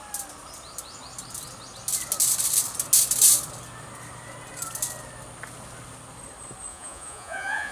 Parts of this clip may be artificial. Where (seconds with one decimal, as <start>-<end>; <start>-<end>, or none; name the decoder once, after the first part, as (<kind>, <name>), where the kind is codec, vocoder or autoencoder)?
6.7-7.7 (vocoder, Vocos)